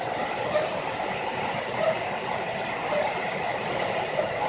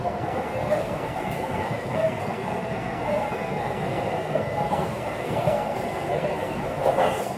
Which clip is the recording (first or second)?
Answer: first